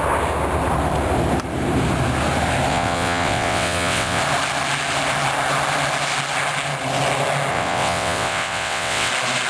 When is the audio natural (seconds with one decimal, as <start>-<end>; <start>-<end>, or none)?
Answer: 0.0-2.7; 4.2-7.5; 9.1-9.5